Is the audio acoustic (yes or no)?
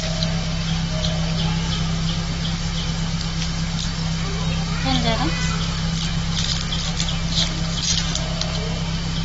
yes